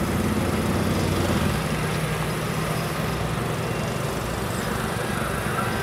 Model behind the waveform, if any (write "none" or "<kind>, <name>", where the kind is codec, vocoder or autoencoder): none